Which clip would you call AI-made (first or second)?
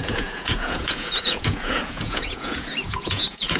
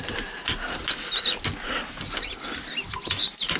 first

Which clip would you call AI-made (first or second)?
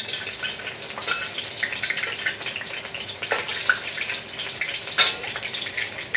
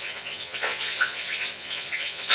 second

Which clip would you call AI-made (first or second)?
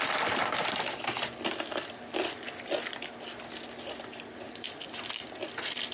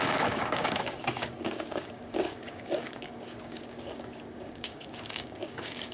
second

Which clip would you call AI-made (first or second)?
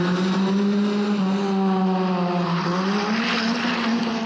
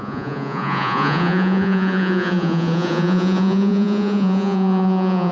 second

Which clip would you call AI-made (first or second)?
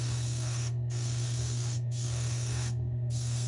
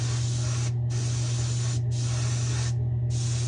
first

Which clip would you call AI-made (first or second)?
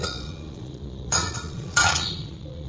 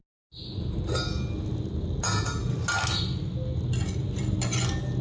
first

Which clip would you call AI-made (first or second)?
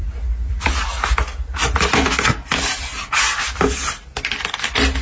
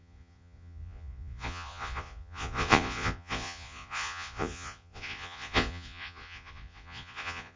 second